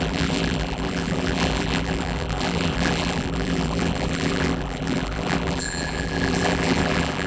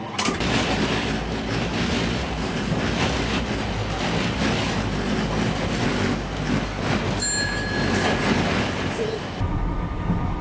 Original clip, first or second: second